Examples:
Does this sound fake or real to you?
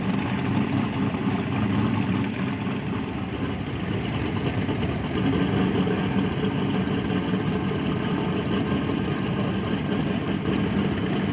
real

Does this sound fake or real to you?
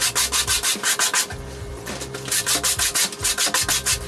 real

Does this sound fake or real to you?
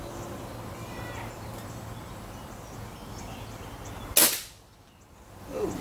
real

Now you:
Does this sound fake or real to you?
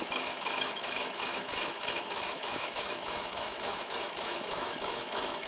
fake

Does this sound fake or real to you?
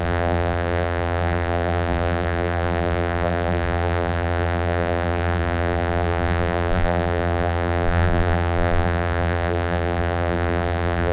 fake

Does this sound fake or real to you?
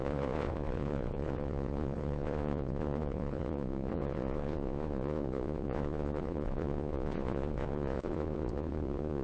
fake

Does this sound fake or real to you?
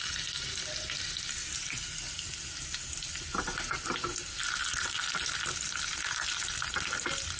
real